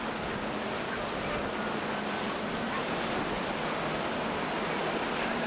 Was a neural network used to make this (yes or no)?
no